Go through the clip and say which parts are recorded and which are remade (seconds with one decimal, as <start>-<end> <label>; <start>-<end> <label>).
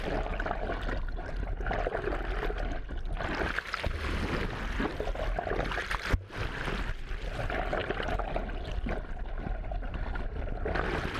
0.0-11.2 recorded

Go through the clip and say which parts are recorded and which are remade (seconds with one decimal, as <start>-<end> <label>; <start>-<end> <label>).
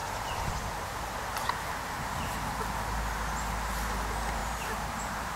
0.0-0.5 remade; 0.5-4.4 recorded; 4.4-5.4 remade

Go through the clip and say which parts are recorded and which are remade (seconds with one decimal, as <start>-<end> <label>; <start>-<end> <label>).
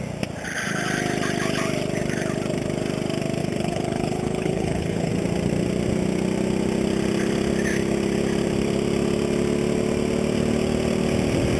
0.0-3.4 recorded; 3.4-5.1 remade; 5.1-11.6 recorded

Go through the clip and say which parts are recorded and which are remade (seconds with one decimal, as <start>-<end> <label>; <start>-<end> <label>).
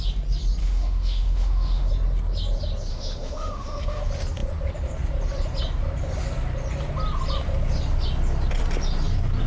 0.0-0.6 recorded; 0.6-1.9 remade; 1.9-2.9 recorded; 2.9-4.0 remade; 4.0-9.5 recorded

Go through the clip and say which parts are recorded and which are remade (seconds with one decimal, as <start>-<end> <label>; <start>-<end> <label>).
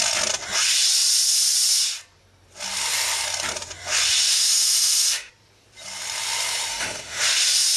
0.0-4.3 recorded; 4.3-5.3 remade; 5.3-6.7 recorded; 6.7-7.2 remade; 7.2-7.8 recorded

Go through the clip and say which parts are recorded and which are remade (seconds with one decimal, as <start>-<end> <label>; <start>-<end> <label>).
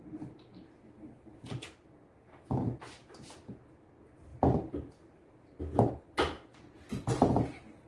0.0-0.5 recorded; 0.5-1.9 remade; 1.9-3.0 recorded; 3.0-3.5 remade; 3.5-4.3 recorded; 4.3-5.6 remade; 5.6-7.9 recorded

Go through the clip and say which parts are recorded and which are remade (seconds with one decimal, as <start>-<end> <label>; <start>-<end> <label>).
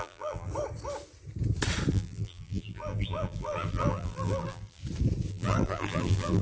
0.0-0.5 remade; 0.5-1.9 recorded; 1.9-4.8 remade; 4.8-5.3 recorded; 5.3-6.4 remade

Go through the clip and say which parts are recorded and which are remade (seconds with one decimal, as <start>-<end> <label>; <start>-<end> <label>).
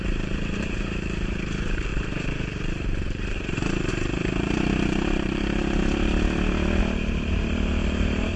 0.0-5.8 remade; 5.8-6.8 recorded; 6.8-8.4 remade